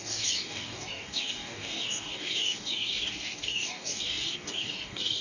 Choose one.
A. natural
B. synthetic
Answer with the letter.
B